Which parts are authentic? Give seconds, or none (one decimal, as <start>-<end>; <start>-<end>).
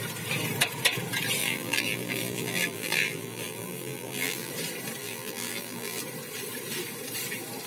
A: 0.0-1.4; 4.5-5.0; 6.0-7.7